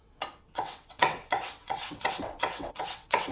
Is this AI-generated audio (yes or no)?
yes